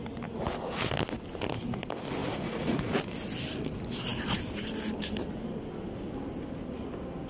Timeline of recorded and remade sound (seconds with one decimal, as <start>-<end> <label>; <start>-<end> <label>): 0.0-2.2 recorded; 2.2-2.9 remade; 2.9-7.3 recorded